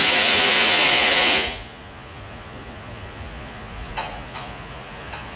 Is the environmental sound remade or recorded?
remade